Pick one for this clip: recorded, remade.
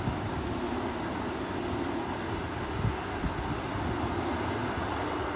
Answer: recorded